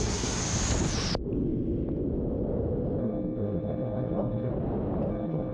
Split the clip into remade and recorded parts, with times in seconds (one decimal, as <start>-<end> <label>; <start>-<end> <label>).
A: 0.0-0.4 remade; 0.4-3.0 recorded; 3.0-4.5 remade; 4.5-5.1 recorded; 5.1-5.5 remade

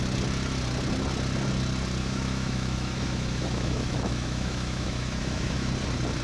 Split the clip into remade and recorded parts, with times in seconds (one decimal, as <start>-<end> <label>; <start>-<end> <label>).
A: 0.0-2.0 recorded; 2.0-5.7 remade; 5.7-6.2 recorded